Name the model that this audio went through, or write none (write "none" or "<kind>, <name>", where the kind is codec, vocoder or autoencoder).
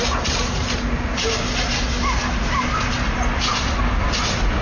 none